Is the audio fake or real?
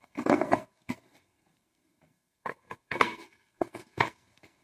fake